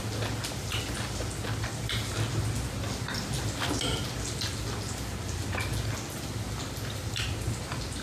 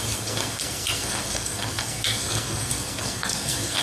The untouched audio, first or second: first